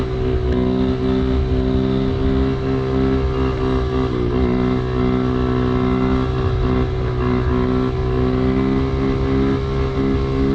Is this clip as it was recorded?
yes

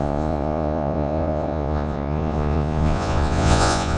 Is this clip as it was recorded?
no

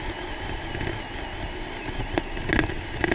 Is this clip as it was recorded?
yes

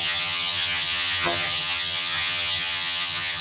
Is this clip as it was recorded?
no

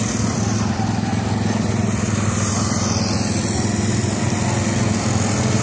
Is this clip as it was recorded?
yes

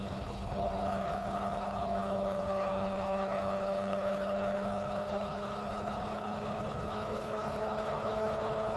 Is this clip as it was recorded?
no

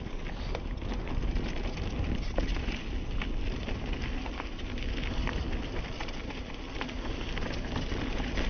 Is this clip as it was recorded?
yes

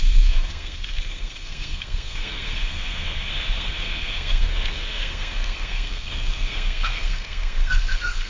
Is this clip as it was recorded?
no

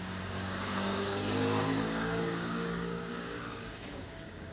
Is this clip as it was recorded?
no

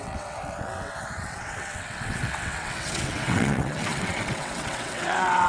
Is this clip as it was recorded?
no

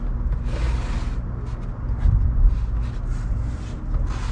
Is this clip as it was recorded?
yes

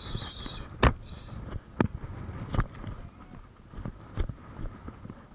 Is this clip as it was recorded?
yes